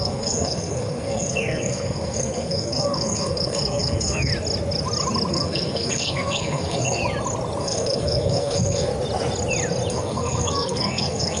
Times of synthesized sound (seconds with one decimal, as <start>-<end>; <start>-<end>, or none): 0.0-4.3; 5.3-7.0; 7.6-8.9; 9.9-11.4